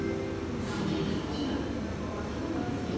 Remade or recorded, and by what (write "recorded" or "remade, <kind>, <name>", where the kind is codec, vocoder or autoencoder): recorded